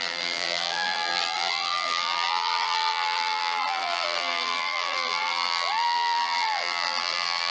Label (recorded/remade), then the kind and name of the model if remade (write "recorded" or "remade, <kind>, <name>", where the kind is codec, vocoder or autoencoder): remade, vocoder, BigVGAN v2